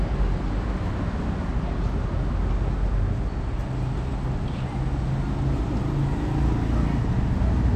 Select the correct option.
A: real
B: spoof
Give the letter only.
A